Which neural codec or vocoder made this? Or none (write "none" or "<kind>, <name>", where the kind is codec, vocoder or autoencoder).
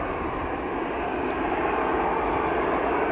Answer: none